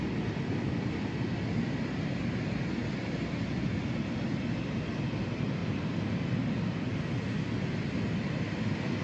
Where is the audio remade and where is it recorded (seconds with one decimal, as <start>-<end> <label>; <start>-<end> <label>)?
0.0-9.0 recorded